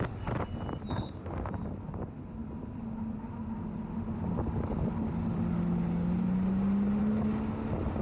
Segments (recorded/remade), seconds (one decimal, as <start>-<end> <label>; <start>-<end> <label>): 0.0-0.9 recorded; 0.9-1.5 remade; 1.5-8.0 recorded

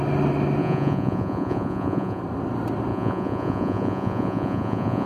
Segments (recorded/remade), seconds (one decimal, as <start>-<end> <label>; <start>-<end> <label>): 0.0-0.6 recorded; 0.6-2.2 remade; 2.2-2.9 recorded; 2.9-5.1 remade

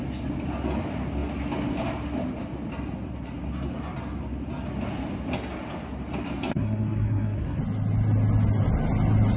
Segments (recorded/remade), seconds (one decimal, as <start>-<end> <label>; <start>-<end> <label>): 0.0-6.5 recorded; 6.5-7.6 remade; 7.6-9.4 recorded

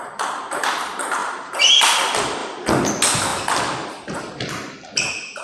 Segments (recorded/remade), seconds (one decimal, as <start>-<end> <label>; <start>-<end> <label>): 0.0-5.4 recorded